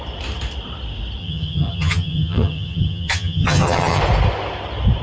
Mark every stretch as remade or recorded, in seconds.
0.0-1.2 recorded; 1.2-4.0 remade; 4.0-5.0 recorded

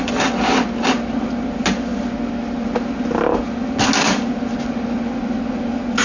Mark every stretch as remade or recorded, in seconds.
0.0-6.0 recorded

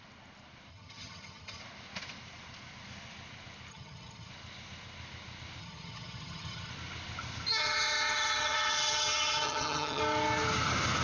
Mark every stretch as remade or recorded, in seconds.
0.0-0.7 recorded; 0.7-1.6 remade; 1.6-3.7 recorded; 3.7-4.3 remade; 4.3-5.6 recorded; 5.6-6.7 remade; 6.7-7.6 recorded; 7.6-10.0 remade; 10.0-11.0 recorded

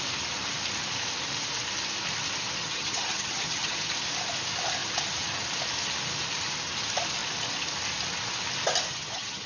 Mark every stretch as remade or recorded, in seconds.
0.0-2.6 recorded; 2.6-3.9 remade; 3.9-8.9 recorded; 8.9-9.5 remade

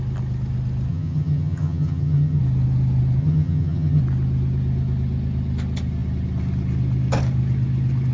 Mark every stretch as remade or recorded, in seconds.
0.0-0.9 recorded; 0.9-2.4 remade; 2.4-3.2 recorded; 3.2-4.0 remade; 4.0-8.1 recorded

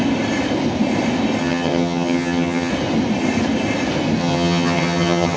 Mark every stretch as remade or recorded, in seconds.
0.0-1.4 recorded; 1.4-2.7 remade; 2.7-4.2 recorded; 4.2-5.4 remade